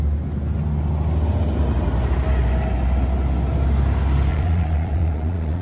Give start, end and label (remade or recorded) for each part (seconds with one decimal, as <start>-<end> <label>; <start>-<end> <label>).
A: 0.0-4.3 recorded; 4.3-5.6 remade